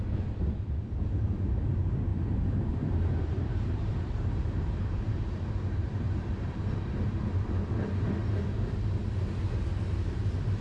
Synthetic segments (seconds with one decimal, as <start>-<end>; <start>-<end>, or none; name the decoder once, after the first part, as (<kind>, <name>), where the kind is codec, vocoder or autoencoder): 2.1-6.4 (vocoder, BigVGAN v2)